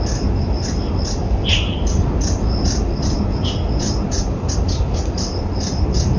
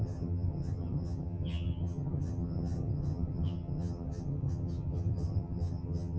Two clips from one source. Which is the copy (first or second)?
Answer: second